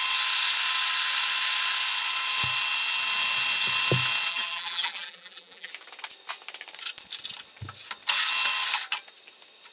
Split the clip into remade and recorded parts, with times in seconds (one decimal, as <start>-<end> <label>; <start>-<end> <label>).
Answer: 0.0-4.3 recorded; 4.3-5.7 remade; 5.7-9.7 recorded